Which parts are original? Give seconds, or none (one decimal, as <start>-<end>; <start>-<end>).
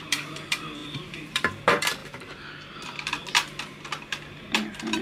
2.0-4.4